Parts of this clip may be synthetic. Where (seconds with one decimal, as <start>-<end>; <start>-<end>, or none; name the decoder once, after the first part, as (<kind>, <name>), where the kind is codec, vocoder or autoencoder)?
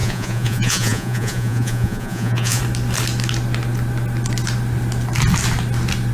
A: 0.0-2.6 (vocoder, Vocos)